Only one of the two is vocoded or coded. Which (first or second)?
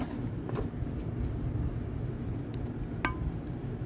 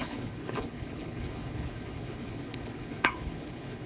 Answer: second